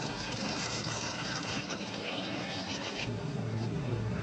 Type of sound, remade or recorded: remade